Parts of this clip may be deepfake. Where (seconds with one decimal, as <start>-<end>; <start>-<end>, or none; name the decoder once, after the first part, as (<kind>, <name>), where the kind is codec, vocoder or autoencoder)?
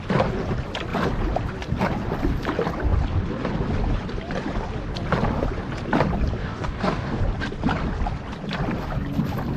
6.4-7.2 (codec, DAC)